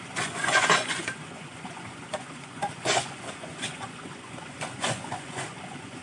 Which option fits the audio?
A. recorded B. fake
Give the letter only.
B